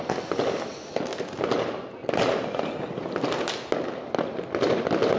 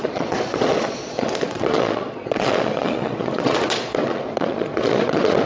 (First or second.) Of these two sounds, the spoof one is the second